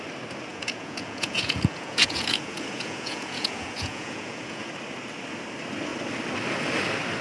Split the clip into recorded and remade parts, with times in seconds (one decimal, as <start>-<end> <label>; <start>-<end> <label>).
0.0-0.5 recorded; 0.5-4.7 remade; 4.7-7.2 recorded